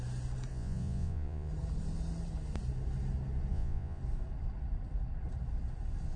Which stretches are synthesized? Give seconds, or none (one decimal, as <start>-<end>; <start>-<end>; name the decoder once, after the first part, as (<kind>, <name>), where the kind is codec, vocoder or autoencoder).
0.5-1.5 (vocoder, Vocos); 3.5-4.0